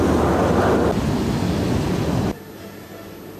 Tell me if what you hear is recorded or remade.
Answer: recorded